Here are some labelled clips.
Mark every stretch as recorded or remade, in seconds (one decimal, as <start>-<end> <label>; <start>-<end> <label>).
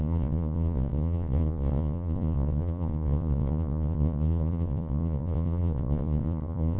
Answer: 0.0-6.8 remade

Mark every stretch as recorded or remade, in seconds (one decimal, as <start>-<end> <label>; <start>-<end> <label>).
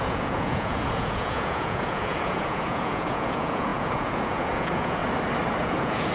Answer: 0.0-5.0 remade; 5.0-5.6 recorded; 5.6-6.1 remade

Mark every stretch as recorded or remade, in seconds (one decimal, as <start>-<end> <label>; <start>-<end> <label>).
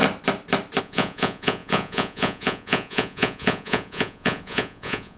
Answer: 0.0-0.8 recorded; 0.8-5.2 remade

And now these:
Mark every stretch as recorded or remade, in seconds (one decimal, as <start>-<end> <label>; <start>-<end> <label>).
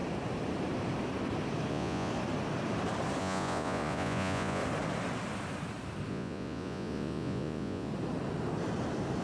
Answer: 0.0-1.7 recorded; 1.7-2.1 remade; 2.1-3.2 recorded; 3.2-4.6 remade; 4.6-6.1 recorded; 6.1-7.9 remade; 7.9-9.2 recorded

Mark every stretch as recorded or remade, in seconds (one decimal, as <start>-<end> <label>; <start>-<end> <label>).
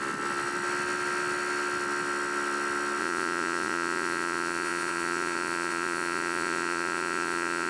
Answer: 0.0-3.0 recorded; 3.0-7.7 remade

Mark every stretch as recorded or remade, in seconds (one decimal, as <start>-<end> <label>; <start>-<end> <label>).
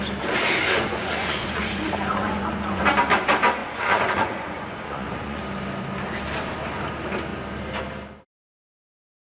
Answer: 0.0-0.6 recorded; 0.6-2.8 remade; 2.8-3.6 recorded; 3.6-5.4 remade; 5.4-9.3 recorded